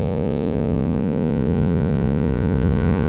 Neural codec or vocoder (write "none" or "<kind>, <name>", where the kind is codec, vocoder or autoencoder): vocoder, Vocos